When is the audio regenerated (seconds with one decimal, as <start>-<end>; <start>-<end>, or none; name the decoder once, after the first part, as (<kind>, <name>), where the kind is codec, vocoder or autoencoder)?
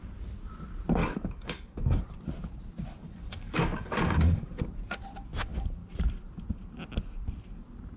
1.0-2.0 (codec, DAC); 3.0-4.6